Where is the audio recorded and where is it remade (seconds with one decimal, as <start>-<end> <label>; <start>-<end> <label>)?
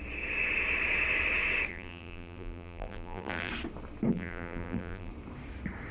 0.0-1.7 recorded; 1.7-3.5 remade; 3.5-4.1 recorded; 4.1-5.1 remade; 5.1-5.9 recorded